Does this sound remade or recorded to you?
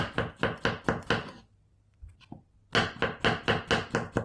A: recorded